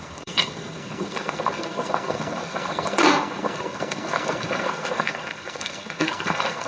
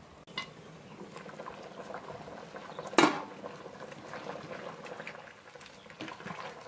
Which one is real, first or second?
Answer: second